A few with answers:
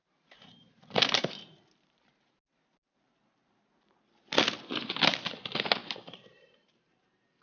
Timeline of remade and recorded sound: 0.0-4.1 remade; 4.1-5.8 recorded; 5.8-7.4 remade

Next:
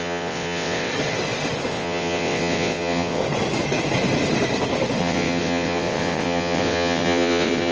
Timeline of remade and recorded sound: 0.0-0.9 remade; 0.9-1.7 recorded; 1.7-3.2 remade; 3.2-5.0 recorded; 5.0-7.7 remade

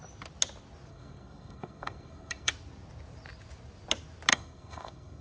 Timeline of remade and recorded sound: 0.0-0.9 recorded; 0.9-2.5 remade; 2.5-4.3 recorded; 4.3-5.2 remade

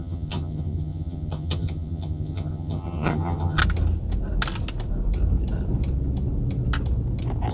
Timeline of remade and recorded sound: 0.0-3.6 remade; 3.6-7.5 recorded

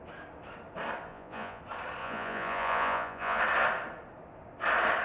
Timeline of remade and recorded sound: 0.0-1.1 recorded; 1.1-1.6 remade; 1.6-2.0 recorded; 2.0-3.4 remade; 3.4-5.0 recorded